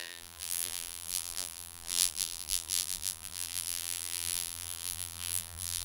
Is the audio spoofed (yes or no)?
yes